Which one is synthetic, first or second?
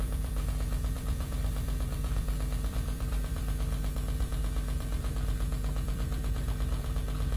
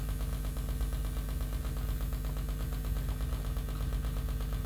first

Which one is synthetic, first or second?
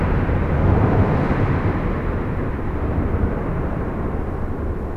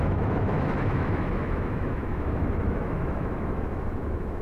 second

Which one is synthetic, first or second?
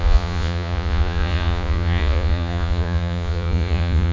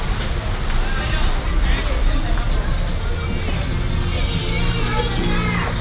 first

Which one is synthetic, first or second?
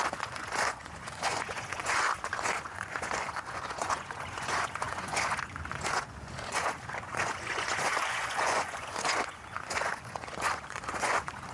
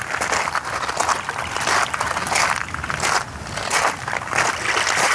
first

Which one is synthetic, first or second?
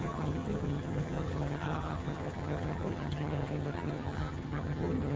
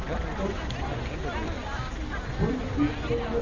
first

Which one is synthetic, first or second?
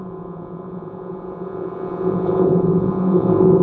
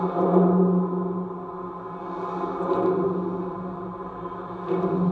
first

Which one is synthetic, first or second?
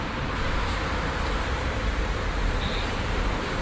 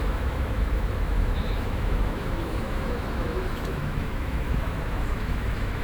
second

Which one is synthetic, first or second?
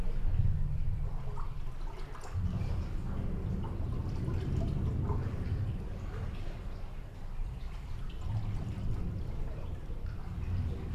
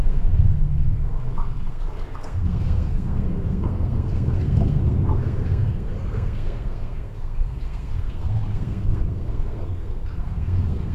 second